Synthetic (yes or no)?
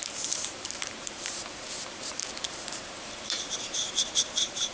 yes